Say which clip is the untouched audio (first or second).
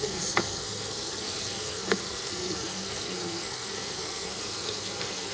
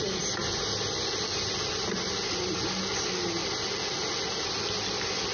second